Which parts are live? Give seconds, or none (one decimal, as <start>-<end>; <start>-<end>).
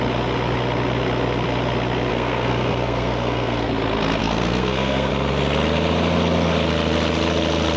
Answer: 0.0-2.1; 3.7-4.2; 5.1-7.8